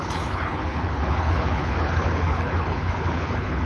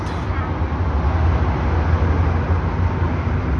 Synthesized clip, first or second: first